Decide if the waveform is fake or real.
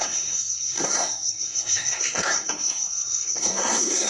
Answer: fake